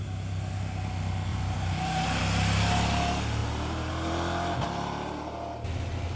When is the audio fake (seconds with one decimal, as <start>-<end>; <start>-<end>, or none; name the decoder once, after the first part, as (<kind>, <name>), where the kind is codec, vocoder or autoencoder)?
1.3-2.2 (vocoder, BigVGAN v2); 3.4-3.9